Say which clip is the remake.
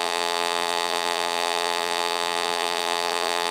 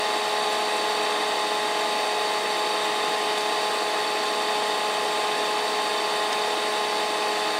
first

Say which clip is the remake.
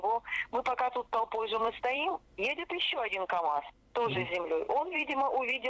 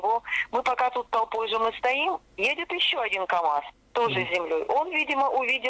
first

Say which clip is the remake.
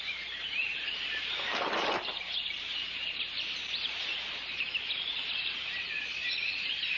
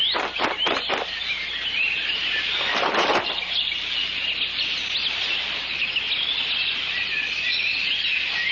first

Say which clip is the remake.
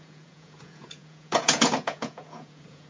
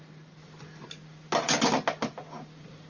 first